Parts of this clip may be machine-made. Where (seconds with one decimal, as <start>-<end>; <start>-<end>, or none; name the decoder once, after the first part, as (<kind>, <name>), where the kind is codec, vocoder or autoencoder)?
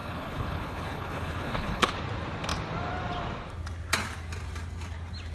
0.0-1.9 (codec, HILCodec)